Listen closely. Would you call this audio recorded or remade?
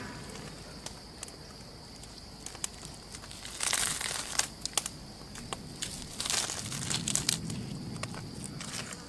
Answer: recorded